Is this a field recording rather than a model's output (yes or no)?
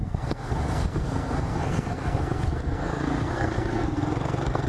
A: no